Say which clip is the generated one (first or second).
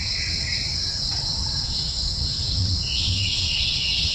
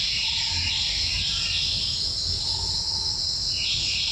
first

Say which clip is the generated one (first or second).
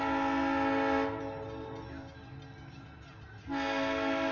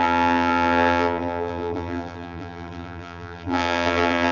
second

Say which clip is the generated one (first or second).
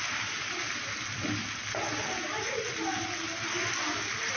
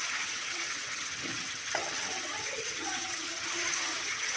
second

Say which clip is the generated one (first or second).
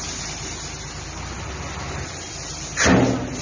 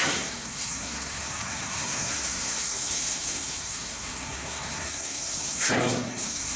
second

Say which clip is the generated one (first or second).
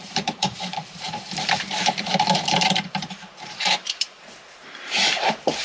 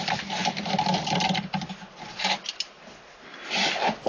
first